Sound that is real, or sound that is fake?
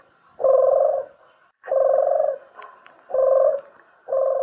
real